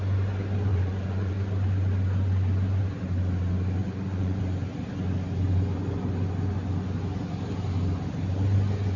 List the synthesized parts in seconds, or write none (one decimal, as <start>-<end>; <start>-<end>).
0.7-1.3; 3.8-4.4